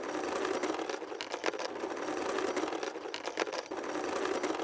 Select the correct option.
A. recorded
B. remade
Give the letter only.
A